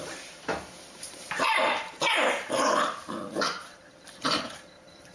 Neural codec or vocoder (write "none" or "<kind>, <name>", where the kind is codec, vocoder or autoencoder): vocoder, BigVGAN v2